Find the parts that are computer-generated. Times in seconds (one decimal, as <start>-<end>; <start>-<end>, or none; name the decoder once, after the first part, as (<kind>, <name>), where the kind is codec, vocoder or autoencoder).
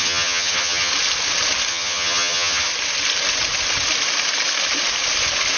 0.0-0.9 (vocoder, HiFi-GAN); 1.7-2.7